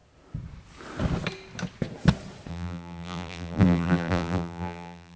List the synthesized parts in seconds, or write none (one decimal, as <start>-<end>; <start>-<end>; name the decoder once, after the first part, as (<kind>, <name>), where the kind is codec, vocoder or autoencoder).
2.5-5.2 (vocoder, BigVGAN v2)